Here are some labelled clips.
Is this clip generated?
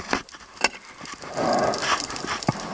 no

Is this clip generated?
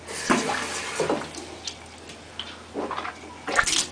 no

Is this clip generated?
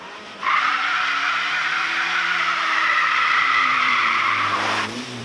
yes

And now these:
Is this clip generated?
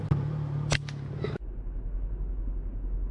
no